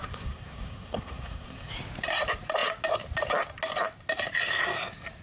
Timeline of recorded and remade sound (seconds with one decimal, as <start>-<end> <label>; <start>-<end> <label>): 0.0-1.7 remade; 1.7-5.2 recorded